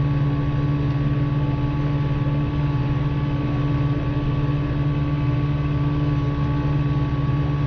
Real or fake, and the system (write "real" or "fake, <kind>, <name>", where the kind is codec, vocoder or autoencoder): real